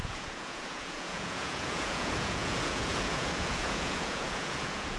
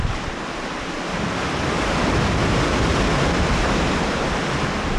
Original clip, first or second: second